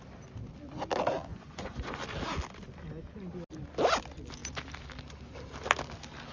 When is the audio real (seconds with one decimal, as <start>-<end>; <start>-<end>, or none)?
0.0-1.3; 2.0-6.3